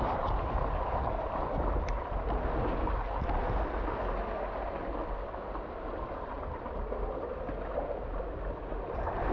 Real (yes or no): yes